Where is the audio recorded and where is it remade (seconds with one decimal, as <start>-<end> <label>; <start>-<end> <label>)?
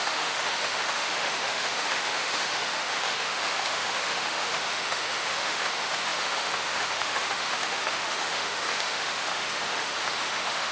0.0-10.7 remade